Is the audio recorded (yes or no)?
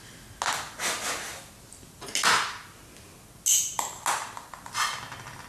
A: yes